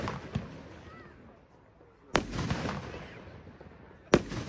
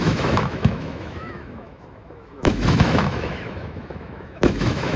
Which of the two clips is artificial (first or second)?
second